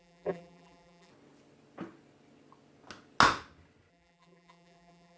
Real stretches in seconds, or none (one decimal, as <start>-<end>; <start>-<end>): 1.1-3.9